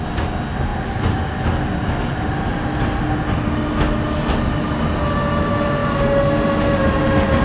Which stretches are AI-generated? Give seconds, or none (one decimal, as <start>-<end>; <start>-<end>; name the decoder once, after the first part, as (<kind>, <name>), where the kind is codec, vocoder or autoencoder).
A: none

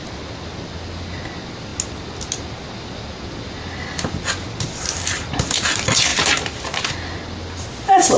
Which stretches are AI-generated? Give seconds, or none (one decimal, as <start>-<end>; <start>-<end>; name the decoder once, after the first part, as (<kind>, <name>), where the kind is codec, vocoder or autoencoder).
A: 6.1-6.9 (vocoder, BigVGAN v2)